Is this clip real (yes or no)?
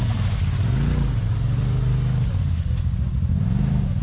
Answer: yes